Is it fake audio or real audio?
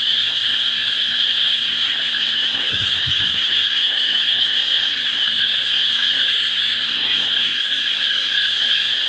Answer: fake